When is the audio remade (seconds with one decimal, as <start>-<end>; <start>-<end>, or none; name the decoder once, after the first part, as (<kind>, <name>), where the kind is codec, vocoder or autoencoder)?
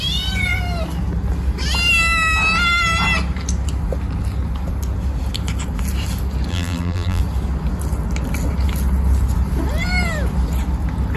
6.5-7.2 (vocoder, BigVGAN v2)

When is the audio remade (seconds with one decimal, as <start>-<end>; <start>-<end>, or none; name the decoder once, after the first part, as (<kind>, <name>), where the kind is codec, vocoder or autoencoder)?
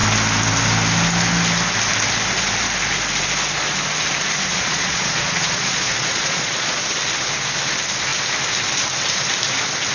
4.5-6.8 (vocoder, Vocos)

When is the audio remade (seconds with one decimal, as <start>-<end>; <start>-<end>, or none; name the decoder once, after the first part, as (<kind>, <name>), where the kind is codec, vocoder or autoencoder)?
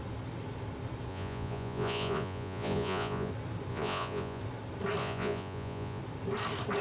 1.1-3.3 (vocoder, Vocos); 3.7-4.4; 5.0-6.0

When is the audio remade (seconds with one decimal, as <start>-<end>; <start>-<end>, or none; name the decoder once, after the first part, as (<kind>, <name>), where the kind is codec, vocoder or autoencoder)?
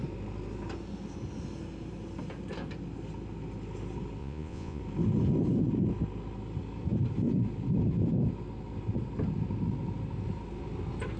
4.2-4.8 (vocoder, Vocos)